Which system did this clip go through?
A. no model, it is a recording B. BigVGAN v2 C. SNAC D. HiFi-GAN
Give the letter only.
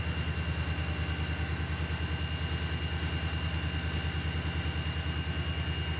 A